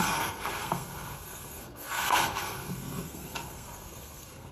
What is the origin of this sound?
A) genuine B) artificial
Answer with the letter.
B